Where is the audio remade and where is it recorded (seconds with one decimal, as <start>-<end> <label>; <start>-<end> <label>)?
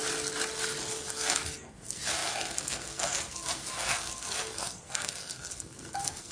0.0-0.9 recorded; 0.9-6.3 remade